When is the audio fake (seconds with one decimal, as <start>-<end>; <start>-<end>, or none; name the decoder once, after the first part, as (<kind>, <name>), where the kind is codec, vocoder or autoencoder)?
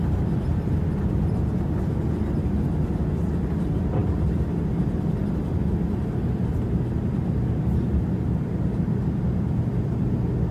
none